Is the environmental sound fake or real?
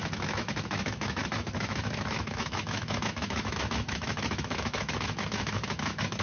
fake